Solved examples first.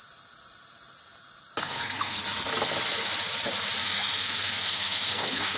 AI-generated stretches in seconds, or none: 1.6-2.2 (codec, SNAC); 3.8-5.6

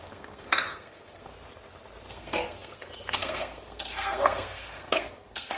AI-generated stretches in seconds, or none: 0.0-1.3 (codec, SNAC); 2.1-5.6